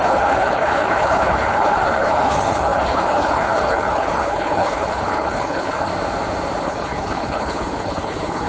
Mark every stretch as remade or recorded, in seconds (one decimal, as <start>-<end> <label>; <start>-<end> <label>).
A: 0.0-5.9 remade; 5.9-6.6 recorded; 6.6-8.5 remade